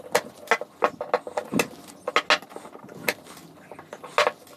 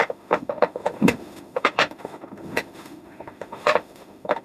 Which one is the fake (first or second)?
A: second